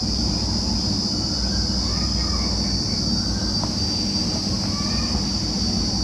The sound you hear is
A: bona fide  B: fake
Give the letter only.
A